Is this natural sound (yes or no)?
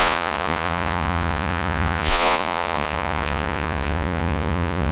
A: no